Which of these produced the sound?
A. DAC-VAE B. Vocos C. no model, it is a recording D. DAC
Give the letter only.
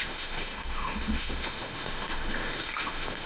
A